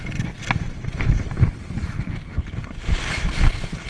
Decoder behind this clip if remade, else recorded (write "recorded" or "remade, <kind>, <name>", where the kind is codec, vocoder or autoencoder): recorded